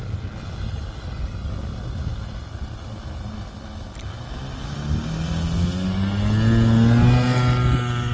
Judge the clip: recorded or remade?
recorded